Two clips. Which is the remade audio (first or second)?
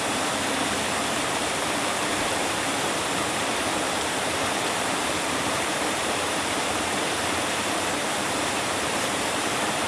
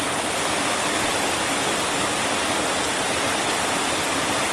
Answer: first